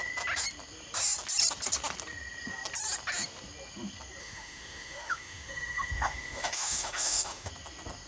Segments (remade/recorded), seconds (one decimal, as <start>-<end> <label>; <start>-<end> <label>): 0.0-4.2 recorded; 4.2-7.5 remade; 7.5-8.1 recorded